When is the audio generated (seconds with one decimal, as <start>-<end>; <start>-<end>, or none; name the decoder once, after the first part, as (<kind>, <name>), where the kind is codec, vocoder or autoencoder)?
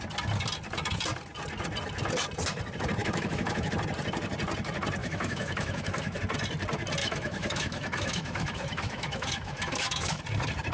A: 3.0-3.7 (autoencoder, DAC-VAE); 5.0-6.2; 7.0-10.2